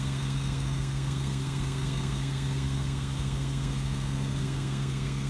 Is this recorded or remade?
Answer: remade